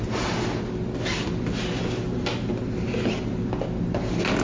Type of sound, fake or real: real